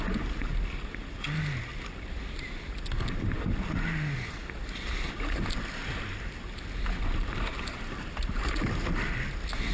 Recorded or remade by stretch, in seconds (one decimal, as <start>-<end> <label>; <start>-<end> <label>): 0.0-9.7 recorded